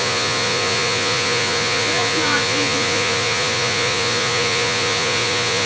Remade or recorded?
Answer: remade